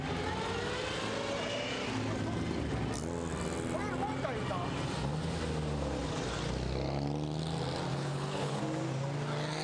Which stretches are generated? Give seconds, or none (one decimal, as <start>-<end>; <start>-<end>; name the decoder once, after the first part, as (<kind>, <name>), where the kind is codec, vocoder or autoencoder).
7.9-8.6 (codec, HILCodec)